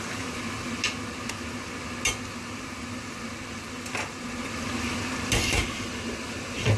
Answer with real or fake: real